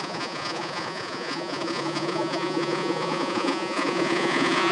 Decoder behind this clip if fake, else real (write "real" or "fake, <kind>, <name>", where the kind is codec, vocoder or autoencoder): fake, vocoder, Vocos